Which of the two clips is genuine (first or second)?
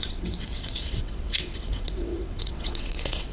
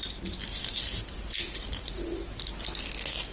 second